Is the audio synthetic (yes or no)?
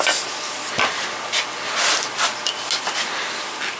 no